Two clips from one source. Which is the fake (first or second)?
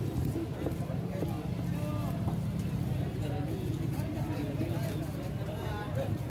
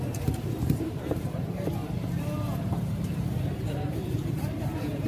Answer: second